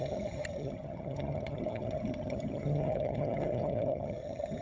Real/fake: fake